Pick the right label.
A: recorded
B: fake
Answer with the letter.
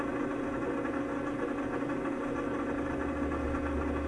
A